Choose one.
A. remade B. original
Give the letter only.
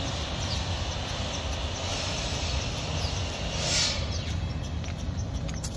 B